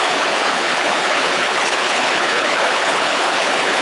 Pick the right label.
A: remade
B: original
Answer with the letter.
A